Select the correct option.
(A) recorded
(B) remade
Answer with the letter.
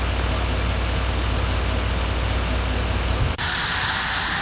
A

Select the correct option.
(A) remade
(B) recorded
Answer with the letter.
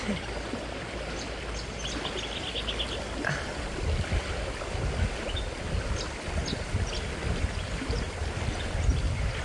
B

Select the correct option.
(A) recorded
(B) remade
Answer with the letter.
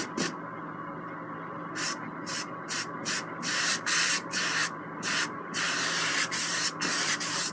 B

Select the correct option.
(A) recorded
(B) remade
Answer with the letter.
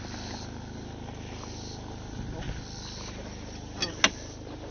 A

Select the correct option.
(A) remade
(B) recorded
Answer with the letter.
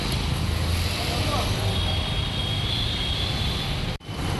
B